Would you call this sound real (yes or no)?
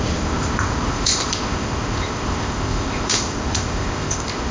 no